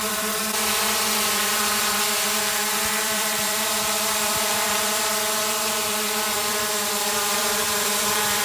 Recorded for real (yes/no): no